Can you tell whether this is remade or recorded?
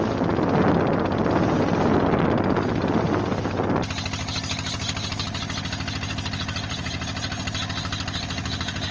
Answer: recorded